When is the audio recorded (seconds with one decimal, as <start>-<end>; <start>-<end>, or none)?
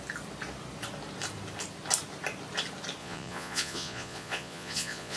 0.0-3.0